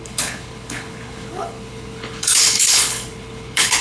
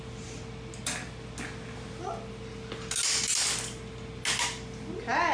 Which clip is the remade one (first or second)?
first